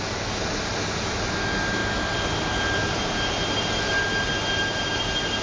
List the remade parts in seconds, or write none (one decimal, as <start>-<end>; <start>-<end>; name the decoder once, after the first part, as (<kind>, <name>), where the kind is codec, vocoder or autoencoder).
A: none